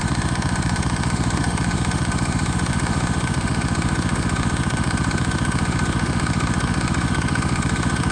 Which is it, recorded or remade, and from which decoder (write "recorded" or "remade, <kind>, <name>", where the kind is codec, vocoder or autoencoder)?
remade, autoencoder, DAC-VAE